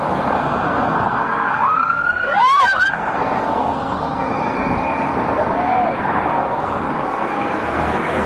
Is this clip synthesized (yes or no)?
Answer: yes